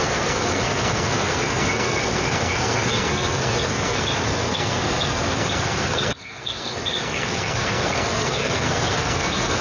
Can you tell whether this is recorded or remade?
remade